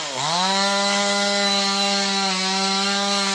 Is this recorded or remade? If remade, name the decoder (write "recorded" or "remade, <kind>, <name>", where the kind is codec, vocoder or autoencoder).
remade, codec, DAC